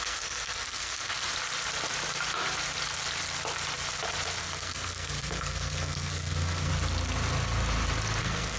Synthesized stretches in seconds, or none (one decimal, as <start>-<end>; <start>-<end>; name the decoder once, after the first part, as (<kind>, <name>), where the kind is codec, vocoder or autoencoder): 0.0-1.1 (codec, SNAC); 4.4-6.7; 8.2-8.6